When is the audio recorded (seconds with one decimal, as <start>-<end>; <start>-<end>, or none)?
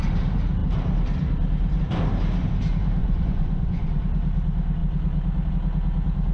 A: 0.0-3.0; 4.0-6.3